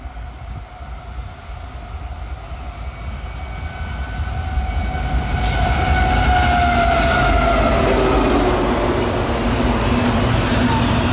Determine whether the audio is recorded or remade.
recorded